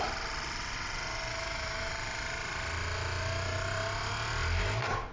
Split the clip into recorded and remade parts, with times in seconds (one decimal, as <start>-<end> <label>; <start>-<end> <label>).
0.0-1.3 recorded; 1.3-1.9 remade; 1.9-5.1 recorded